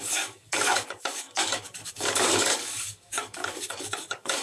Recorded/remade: remade